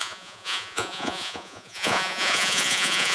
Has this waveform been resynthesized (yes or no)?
yes